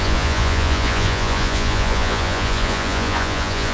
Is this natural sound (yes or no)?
no